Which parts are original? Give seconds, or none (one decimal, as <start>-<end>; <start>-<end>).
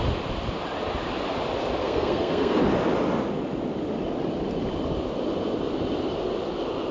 0.0-1.8; 2.6-6.9